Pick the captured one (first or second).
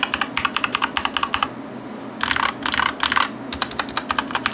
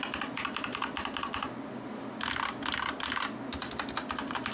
first